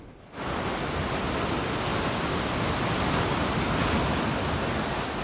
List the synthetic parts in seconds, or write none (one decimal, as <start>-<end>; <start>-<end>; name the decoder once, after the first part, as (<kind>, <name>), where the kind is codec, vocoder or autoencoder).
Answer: none